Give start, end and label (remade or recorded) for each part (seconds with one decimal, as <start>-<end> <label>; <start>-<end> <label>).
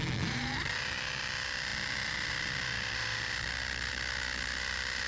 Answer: 0.0-5.1 recorded